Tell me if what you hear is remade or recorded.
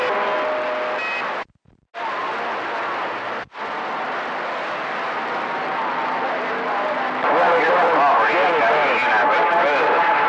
recorded